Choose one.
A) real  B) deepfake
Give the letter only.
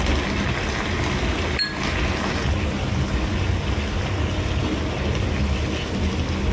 A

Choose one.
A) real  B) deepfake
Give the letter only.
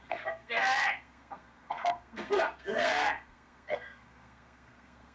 B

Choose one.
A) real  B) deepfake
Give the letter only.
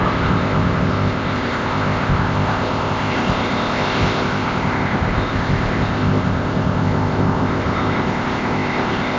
B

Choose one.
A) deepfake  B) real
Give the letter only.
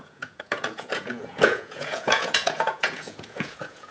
A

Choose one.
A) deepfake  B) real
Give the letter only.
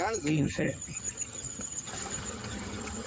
A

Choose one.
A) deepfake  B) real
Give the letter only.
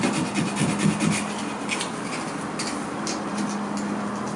B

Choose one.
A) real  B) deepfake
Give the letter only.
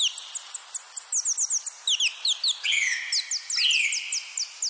A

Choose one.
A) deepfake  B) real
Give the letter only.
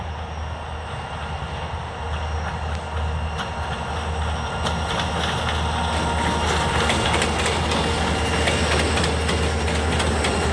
B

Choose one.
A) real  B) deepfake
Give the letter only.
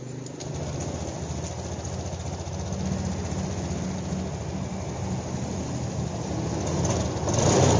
A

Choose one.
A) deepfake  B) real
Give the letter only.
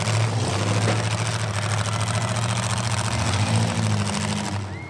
B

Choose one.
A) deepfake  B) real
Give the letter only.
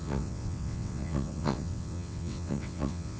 A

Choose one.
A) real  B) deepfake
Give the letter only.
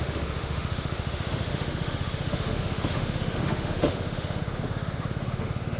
B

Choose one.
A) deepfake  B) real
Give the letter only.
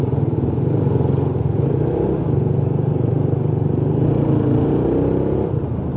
B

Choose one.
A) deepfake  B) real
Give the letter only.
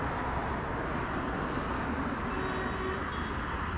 B